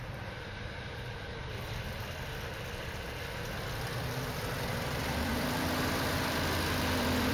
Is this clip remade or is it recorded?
remade